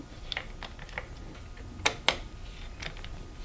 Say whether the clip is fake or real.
real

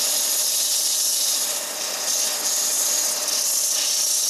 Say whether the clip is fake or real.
real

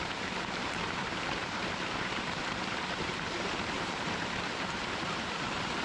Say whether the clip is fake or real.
fake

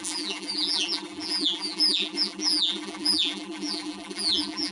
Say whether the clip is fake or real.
fake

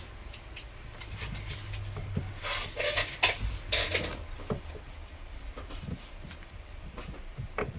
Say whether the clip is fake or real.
real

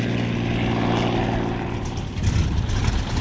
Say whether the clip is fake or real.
real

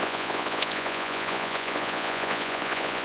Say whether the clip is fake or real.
fake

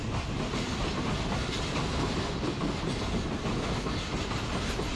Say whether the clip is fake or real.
real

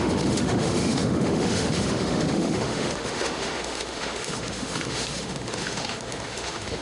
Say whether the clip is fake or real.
fake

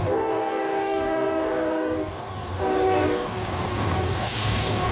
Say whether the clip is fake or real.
fake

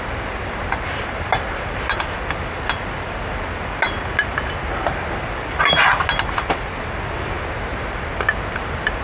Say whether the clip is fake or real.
fake